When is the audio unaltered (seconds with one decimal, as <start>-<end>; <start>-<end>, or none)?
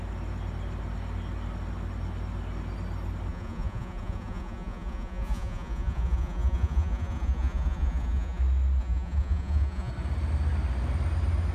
0.0-3.3; 8.4-8.8; 9.9-11.5